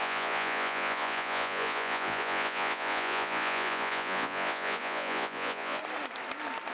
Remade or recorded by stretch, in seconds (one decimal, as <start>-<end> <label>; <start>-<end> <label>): 0.0-5.8 remade; 5.8-6.7 recorded